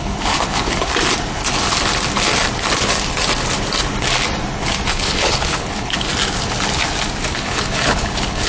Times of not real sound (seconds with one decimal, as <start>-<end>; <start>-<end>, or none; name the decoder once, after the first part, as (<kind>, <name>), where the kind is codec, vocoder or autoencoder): 0.0-0.9 (codec, HILCodec); 4.9-6.1; 7.3-8.5